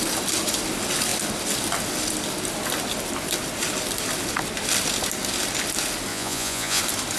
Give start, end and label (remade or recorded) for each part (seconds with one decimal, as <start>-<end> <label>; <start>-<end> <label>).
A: 0.0-6.1 recorded; 6.1-6.8 remade; 6.8-7.2 recorded